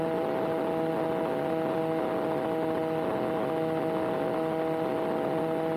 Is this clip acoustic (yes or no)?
yes